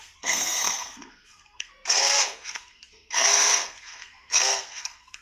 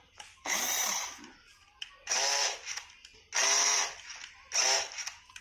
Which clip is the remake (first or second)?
first